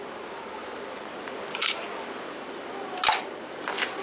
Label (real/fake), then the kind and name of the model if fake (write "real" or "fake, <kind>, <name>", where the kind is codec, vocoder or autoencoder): real